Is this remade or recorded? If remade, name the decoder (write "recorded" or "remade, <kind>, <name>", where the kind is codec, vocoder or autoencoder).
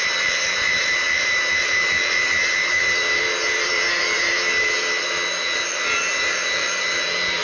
remade, vocoder, BigVGAN v2